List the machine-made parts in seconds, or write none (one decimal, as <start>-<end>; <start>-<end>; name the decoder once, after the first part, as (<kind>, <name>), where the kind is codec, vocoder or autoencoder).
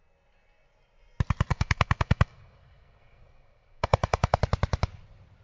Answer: 1.5-4.4 (codec, SNAC)